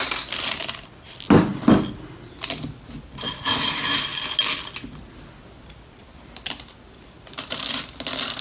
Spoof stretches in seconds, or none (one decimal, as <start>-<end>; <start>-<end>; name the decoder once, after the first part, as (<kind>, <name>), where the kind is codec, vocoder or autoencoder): none